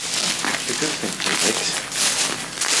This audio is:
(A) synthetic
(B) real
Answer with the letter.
B